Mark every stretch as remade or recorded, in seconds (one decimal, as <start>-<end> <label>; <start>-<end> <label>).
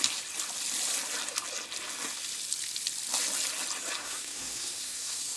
0.0-4.0 recorded; 4.0-5.4 remade